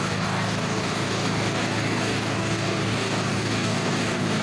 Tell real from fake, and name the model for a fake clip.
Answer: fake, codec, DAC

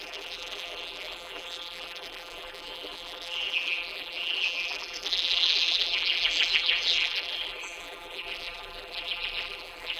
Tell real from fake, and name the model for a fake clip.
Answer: fake, vocoder, BigVGAN v2